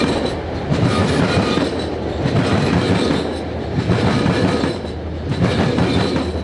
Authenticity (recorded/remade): recorded